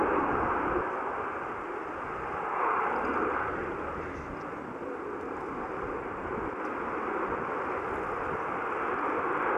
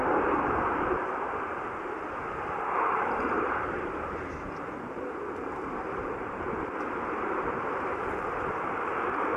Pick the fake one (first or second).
second